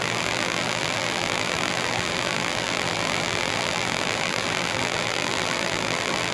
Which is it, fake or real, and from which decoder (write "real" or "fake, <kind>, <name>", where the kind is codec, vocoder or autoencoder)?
fake, vocoder, BigVGAN v2